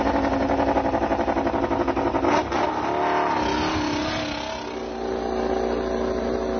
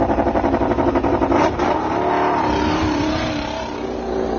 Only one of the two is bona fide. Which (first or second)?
first